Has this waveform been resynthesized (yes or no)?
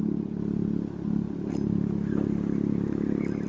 no